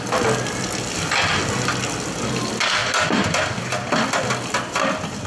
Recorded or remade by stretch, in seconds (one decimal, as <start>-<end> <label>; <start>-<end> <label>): 0.0-5.3 recorded